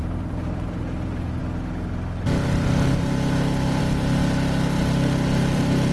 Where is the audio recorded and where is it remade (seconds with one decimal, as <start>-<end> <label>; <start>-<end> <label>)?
0.0-1.4 remade; 1.4-3.8 recorded; 3.8-4.2 remade; 4.2-4.8 recorded; 4.8-5.9 remade